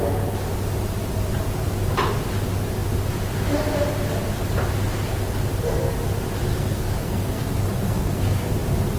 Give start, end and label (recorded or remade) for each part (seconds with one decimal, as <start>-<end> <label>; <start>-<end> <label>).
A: 0.0-6.5 recorded; 6.5-8.5 remade; 8.5-9.0 recorded